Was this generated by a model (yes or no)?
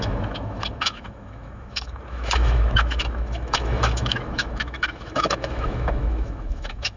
yes